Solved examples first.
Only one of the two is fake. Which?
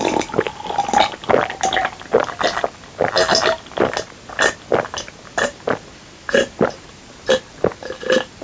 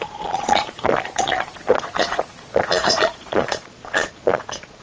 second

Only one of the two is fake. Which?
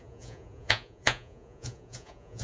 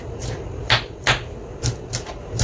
first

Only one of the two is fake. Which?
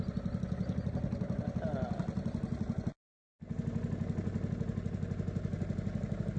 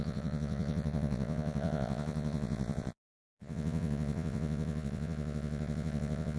second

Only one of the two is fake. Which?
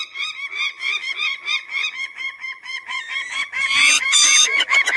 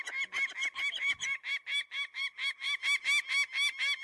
first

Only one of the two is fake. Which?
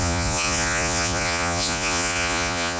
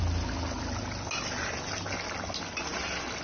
first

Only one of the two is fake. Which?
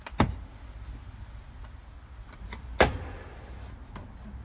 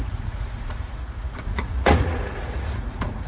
second